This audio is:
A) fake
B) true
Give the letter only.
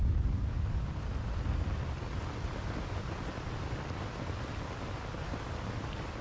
B